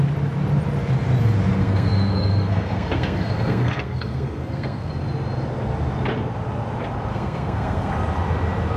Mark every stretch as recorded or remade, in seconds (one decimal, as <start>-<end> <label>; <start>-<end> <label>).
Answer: 0.0-1.6 recorded; 1.6-4.9 remade; 4.9-7.1 recorded; 7.1-7.9 remade; 7.9-8.8 recorded